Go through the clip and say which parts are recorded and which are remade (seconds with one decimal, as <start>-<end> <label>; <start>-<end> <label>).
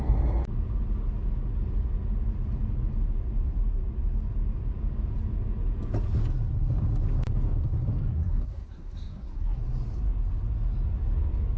0.0-8.1 recorded; 8.1-9.6 remade; 9.6-11.6 recorded